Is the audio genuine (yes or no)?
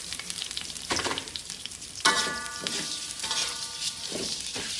no